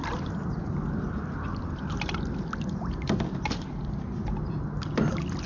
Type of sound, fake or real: real